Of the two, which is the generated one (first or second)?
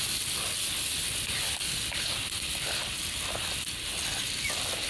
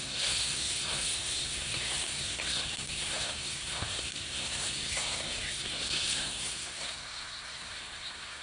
second